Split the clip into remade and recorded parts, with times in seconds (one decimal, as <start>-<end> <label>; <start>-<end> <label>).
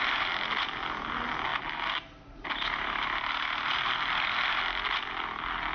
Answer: 0.0-5.7 recorded